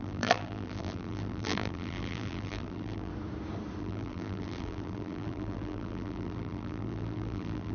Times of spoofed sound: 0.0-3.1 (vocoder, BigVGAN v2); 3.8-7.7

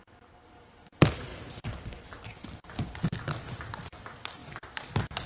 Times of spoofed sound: 1.3-2.8 (vocoder, BigVGAN v2)

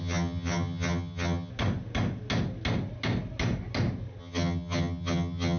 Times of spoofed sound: 0.0-1.5 (vocoder, HiFi-GAN); 4.2-5.6

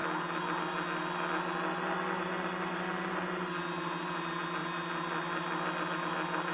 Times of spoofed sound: none

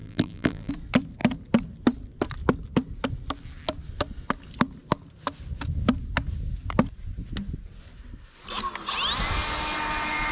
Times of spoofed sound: 0.0-0.7 (vocoder, BigVGAN v2)

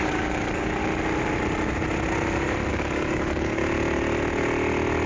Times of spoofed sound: 0.0-0.8 (codec, DAC); 2.7-3.6

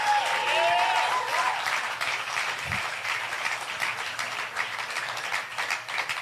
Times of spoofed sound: 1.3-5.0 (vocoder, BigVGAN v2)